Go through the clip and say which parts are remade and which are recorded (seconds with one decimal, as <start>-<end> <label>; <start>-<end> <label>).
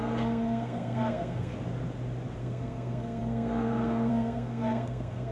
0.0-1.5 remade; 1.5-2.4 recorded; 2.4-5.3 remade